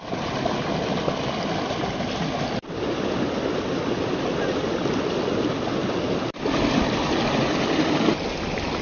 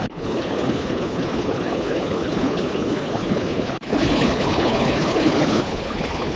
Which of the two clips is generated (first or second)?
second